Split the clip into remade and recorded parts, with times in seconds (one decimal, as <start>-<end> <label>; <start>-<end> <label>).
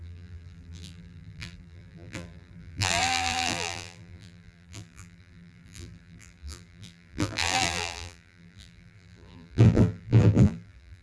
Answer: 0.0-11.0 remade